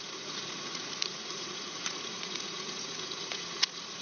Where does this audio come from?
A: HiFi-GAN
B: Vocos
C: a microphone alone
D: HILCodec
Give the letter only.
B